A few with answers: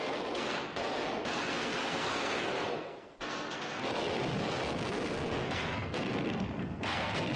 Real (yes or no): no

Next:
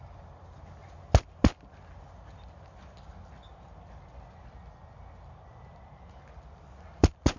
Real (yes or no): yes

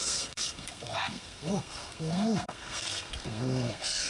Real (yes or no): no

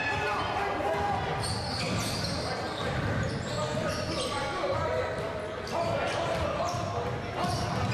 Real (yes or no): yes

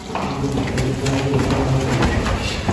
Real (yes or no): yes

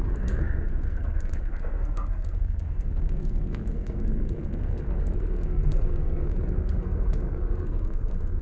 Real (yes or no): no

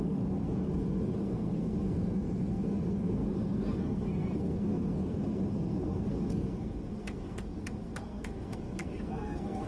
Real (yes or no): no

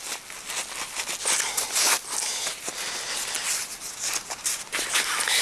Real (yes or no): yes